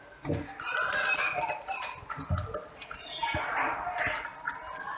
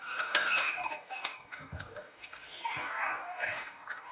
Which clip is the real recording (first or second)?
first